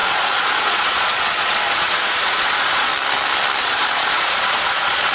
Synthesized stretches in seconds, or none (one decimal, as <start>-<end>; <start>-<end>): 0.0-2.9; 3.6-5.1